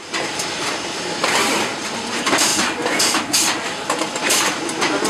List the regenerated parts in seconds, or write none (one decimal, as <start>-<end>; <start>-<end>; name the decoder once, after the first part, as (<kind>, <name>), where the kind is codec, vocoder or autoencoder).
0.0-5.1 (vocoder, BigVGAN v2)

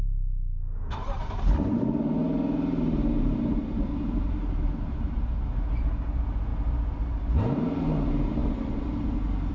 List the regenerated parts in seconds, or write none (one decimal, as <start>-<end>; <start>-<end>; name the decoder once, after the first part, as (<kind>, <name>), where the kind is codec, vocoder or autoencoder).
0.0-6.5 (vocoder, BigVGAN v2); 7.4-8.4

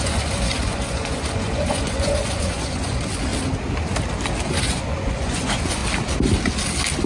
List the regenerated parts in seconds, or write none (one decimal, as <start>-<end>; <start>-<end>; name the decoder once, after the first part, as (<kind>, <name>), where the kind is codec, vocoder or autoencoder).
0.0-3.3 (vocoder, Vocos); 4.6-5.8

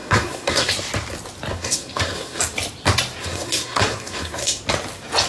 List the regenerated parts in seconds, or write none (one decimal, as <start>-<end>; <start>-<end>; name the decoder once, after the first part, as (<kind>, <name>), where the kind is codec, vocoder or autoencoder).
0.0-0.7 (codec, SNAC); 1.5-2.4; 3.2-4.6

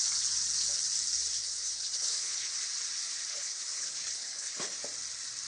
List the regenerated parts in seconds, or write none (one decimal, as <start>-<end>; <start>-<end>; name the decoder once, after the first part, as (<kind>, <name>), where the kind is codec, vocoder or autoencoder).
1.4-2.5 (codec, HILCodec); 3.3-4.8

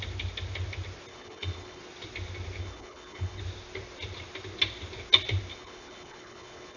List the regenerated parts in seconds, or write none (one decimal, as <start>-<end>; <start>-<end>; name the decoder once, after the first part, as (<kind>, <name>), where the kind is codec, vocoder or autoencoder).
1.1-1.8 (codec, HILCodec); 2.6-3.4; 5.5-6.8